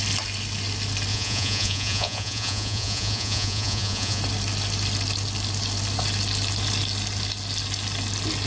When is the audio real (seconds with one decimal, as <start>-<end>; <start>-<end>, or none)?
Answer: 0.0-1.1; 4.2-8.5